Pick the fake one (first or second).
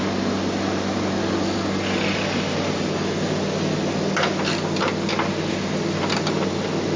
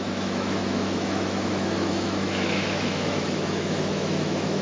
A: second